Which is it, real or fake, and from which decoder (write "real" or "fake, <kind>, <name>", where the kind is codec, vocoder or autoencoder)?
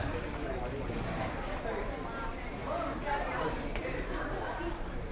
fake, vocoder, BigVGAN v2